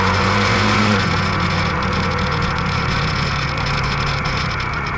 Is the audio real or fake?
fake